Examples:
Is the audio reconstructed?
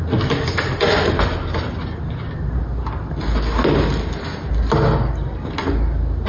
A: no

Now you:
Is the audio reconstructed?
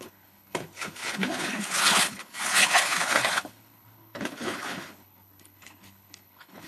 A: yes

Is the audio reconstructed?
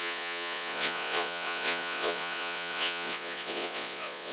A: yes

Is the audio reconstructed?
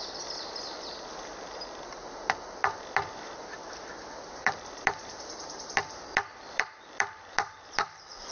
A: yes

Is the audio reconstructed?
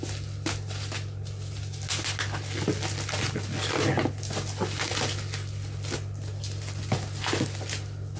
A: no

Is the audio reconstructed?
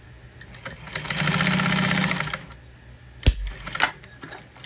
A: no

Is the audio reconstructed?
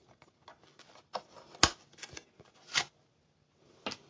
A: no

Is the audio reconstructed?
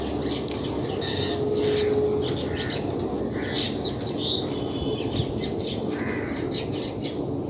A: no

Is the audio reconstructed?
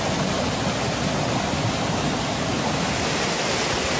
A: no